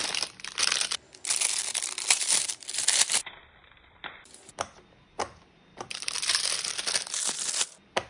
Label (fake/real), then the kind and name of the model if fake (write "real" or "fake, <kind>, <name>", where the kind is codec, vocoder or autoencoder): fake, vocoder, BigVGAN v2